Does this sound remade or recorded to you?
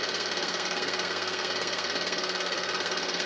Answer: remade